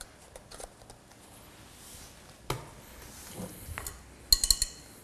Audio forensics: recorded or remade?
recorded